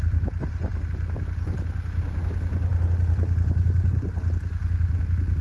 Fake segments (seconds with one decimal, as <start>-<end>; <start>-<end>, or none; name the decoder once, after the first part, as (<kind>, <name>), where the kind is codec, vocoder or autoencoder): none